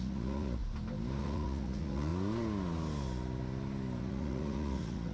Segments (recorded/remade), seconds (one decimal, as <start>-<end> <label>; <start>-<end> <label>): 0.0-0.6 remade; 0.6-1.2 recorded; 1.2-2.1 remade; 2.1-4.0 recorded; 4.0-5.1 remade